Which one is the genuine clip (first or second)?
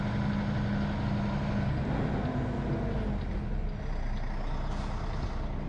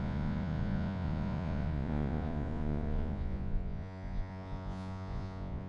first